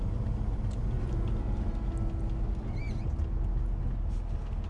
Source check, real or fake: real